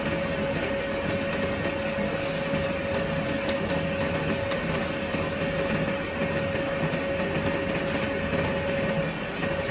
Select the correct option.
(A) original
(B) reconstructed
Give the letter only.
A